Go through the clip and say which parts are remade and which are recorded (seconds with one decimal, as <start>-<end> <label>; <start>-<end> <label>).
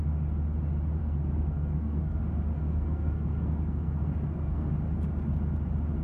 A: 0.0-1.0 recorded; 1.0-2.2 remade; 2.2-2.6 recorded; 2.6-4.7 remade; 4.7-6.0 recorded